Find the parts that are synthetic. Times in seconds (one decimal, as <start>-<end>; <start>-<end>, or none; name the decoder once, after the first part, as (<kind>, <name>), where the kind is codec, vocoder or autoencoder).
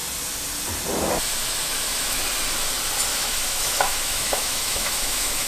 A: 1.6-2.2 (autoencoder, DAC-VAE); 3.1-5.5